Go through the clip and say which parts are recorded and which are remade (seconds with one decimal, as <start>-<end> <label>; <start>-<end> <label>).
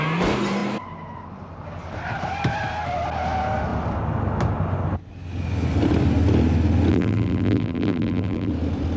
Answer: 0.0-6.9 recorded; 6.9-8.5 remade; 8.5-9.0 recorded